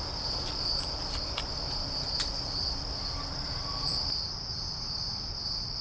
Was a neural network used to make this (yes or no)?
no